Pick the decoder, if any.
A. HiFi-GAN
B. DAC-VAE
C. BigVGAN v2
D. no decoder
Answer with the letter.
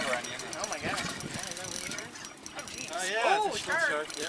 C